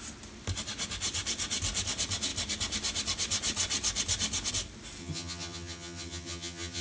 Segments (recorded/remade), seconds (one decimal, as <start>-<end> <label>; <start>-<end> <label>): 0.0-5.0 recorded; 5.0-6.8 remade